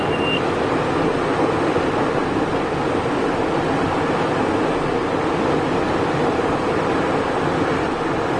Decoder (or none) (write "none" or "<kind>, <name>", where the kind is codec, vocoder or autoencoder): none